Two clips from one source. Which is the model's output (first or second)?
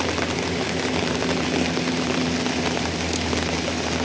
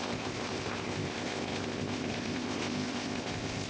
second